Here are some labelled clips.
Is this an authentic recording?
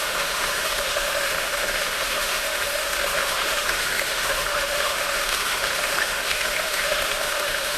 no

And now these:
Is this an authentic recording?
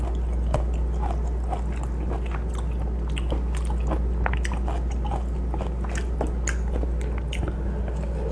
yes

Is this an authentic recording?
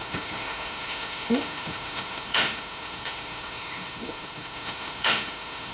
no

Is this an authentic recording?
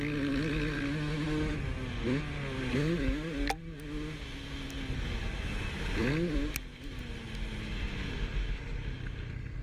yes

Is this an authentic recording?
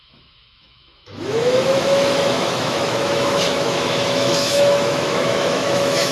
no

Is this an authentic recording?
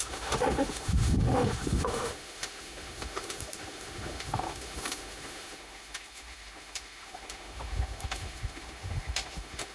no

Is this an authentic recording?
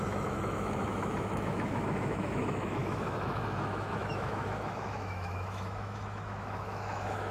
no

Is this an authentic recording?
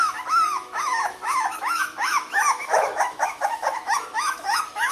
no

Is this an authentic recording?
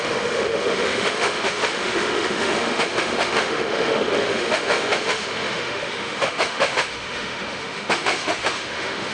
no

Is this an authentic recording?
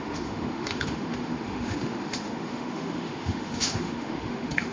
no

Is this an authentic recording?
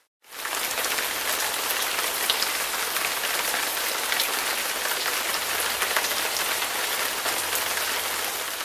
yes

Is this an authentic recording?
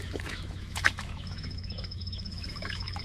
no